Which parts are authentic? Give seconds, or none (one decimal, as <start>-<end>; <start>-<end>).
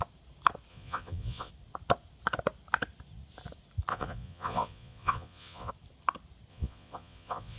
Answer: 0.0-0.7; 1.5-3.9; 5.7-6.5